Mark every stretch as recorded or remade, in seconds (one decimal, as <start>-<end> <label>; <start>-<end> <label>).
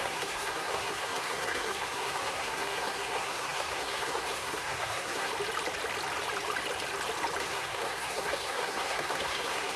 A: 0.0-5.3 remade; 5.3-7.4 recorded; 7.4-9.8 remade